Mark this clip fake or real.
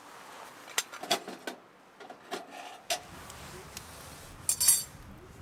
real